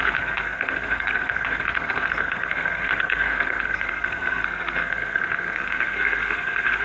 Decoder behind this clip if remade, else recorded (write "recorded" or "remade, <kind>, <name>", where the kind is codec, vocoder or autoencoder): remade, codec, SNAC